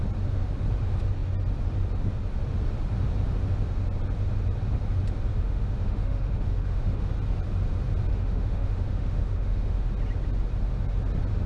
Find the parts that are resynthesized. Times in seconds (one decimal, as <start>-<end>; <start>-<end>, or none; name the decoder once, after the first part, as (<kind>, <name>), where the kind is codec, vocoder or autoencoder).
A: 5.3-7.1 (autoencoder, DAC-VAE); 8.1-9.9